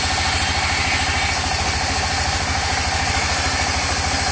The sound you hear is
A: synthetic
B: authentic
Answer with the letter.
B